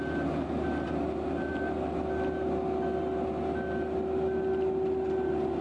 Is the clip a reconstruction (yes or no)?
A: no